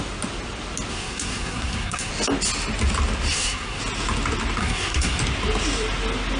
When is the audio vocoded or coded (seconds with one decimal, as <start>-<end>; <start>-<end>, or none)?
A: 0.9-2.1; 3.3-3.8; 4.6-5.2

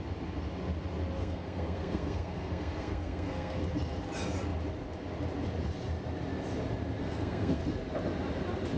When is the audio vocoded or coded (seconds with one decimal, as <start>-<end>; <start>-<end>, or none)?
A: 1.2-3.6; 7.0-7.6

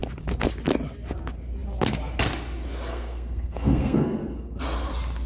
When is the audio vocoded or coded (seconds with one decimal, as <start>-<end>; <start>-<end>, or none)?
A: 2.9-4.6

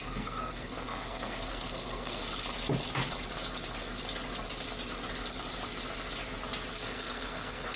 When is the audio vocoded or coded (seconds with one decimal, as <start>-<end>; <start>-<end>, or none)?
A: 0.0-2.2; 6.7-7.8

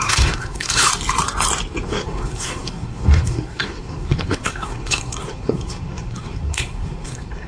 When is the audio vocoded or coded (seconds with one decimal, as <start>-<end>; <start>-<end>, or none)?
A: 0.0-0.9; 1.9-7.5

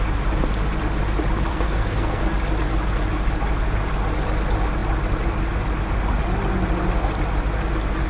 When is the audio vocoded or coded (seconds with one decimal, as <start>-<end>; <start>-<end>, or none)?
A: 1.5-2.2